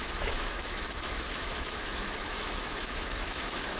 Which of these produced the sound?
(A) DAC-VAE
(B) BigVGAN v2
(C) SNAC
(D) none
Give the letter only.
A